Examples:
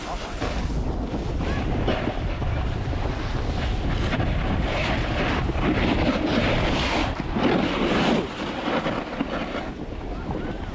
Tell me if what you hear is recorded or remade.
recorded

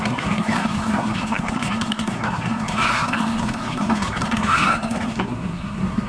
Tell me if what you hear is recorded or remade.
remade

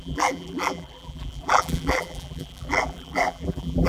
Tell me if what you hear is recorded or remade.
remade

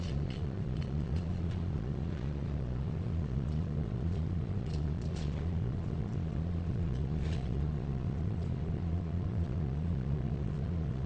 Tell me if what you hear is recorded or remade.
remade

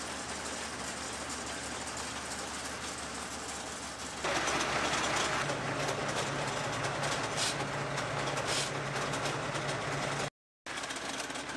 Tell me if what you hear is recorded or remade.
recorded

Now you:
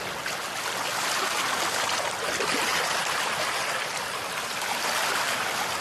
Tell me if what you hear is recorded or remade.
recorded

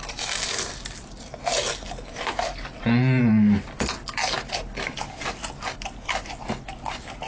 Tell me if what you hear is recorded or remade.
recorded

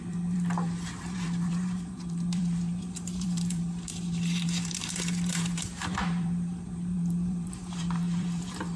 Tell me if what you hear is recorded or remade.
remade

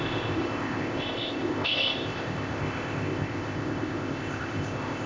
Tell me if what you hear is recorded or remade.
remade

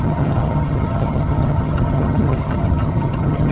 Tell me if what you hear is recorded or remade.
remade